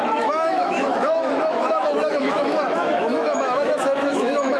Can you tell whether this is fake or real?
fake